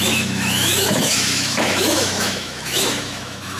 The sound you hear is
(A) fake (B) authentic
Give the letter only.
A